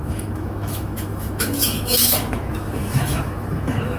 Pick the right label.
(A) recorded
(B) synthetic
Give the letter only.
B